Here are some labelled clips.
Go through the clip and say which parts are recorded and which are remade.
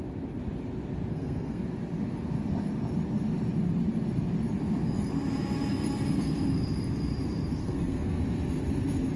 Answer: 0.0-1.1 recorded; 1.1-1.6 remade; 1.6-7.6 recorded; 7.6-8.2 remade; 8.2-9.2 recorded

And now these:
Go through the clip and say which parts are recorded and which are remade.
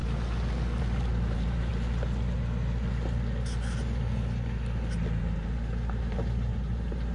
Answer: 0.0-0.8 recorded; 0.8-1.7 remade; 1.7-5.2 recorded; 5.2-7.1 remade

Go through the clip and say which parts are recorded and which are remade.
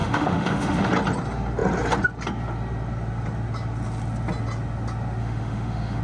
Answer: 0.0-0.9 remade; 0.9-5.2 recorded; 5.2-6.0 remade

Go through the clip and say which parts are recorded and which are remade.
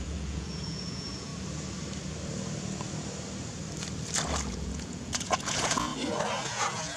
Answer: 0.0-1.3 remade; 1.3-4.5 recorded; 4.5-5.9 remade; 5.9-6.5 recorded; 6.5-7.0 remade